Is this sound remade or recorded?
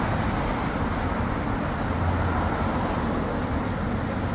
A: recorded